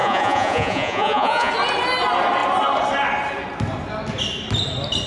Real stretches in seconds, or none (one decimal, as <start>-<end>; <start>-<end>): 1.5-5.1